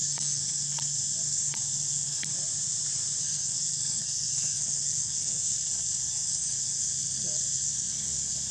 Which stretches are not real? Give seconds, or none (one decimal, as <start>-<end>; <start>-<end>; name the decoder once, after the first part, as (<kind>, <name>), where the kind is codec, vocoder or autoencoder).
0.0-2.3 (codec, SNAC); 3.2-8.5